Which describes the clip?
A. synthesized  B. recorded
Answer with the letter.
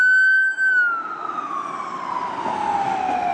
B